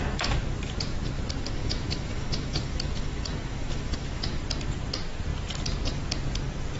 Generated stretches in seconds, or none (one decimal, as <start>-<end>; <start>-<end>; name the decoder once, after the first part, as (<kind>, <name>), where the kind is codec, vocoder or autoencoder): 1.6-4.4 (autoencoder, DAC-VAE)

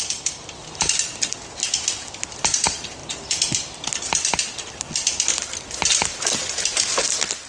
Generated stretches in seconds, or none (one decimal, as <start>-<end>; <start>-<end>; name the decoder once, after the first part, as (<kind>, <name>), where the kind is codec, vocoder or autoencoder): none

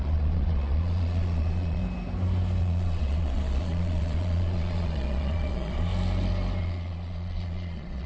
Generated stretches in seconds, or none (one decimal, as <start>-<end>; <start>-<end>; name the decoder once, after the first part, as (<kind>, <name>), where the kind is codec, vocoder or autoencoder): 0.0-1.8 (vocoder, Vocos); 2.6-5.9; 6.6-8.1

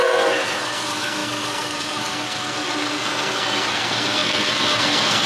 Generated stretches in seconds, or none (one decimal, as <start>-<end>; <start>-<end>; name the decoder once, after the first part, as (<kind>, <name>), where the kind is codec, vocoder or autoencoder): 0.0-5.3 (codec, SNAC)